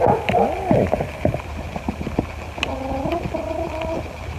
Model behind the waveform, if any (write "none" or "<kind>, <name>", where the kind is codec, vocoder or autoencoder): none